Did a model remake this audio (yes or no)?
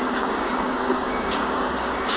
yes